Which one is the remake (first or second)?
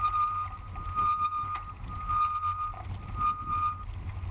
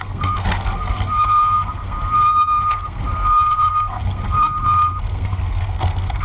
second